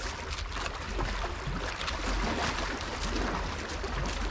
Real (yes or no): yes